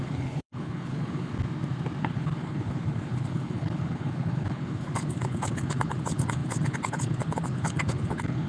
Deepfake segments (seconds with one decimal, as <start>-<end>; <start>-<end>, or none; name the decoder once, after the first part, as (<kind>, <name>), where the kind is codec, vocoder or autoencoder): 0.0-1.3 (codec, HILCodec); 2.0-8.5